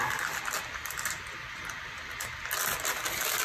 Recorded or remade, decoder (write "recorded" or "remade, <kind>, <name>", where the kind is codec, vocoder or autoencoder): recorded